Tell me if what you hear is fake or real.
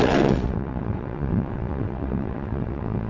fake